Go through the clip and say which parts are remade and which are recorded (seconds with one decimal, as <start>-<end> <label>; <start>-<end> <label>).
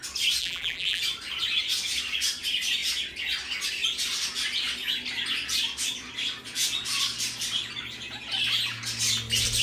0.0-0.4 recorded; 0.4-1.0 remade; 1.0-9.6 recorded